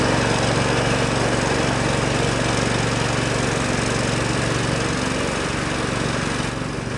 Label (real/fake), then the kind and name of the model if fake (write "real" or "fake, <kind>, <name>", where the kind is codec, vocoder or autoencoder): real